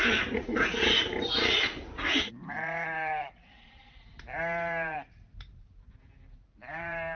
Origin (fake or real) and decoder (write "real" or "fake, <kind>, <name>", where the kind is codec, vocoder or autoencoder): fake, vocoder, BigVGAN v2